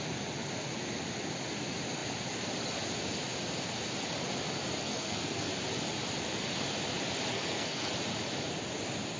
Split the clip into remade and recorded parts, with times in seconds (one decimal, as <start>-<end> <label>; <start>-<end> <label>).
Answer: 0.0-4.8 recorded; 4.8-5.5 remade; 5.5-7.3 recorded; 7.3-7.9 remade; 7.9-9.2 recorded